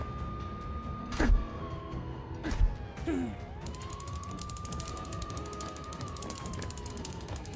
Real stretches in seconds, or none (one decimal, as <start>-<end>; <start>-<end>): 0.0-1.0; 2.5-3.9; 4.4-4.9; 6.2-6.9